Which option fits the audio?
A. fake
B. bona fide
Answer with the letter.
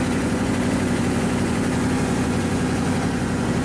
A